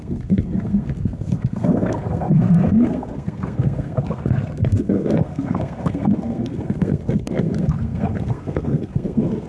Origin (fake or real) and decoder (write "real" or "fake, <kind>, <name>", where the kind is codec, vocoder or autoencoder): fake, codec, SNAC